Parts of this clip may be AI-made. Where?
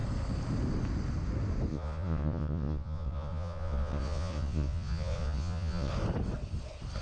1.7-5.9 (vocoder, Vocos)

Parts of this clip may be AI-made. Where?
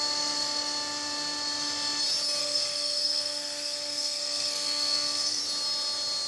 2.4-5.4 (codec, SNAC)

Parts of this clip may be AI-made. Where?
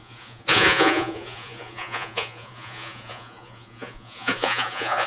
0.0-5.1 (vocoder, Vocos)